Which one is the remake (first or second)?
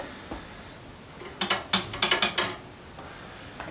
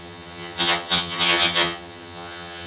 second